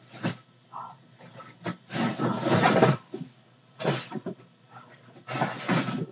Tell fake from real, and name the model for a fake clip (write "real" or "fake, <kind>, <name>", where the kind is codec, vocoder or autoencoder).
real